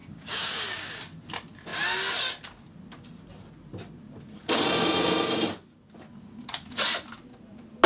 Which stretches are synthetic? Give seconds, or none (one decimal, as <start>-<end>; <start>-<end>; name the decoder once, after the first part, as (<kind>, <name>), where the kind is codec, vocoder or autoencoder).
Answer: 0.0-1.0 (codec, DAC)